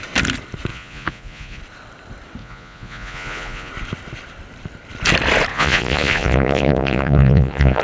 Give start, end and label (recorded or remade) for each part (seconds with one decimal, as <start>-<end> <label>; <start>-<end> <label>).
0.0-0.7 recorded; 0.7-1.6 remade; 1.6-2.4 recorded; 2.4-3.7 remade; 3.7-5.5 recorded; 5.5-7.8 remade